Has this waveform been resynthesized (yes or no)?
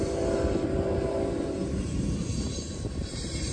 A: yes